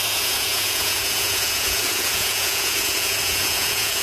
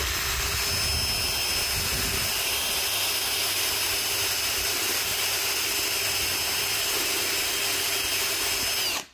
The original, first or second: second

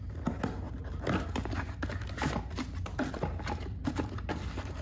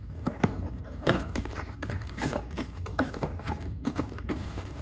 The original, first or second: first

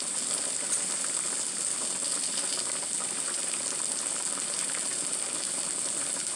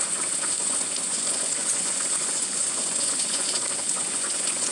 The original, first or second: first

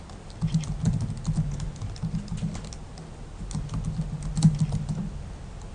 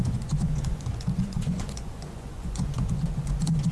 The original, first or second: first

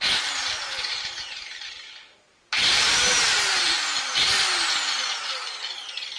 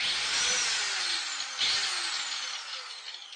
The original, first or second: second